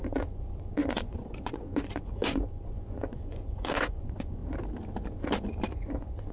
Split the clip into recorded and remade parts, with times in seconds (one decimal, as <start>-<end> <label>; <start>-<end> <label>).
0.0-4.4 remade; 4.4-5.7 recorded; 5.7-6.3 remade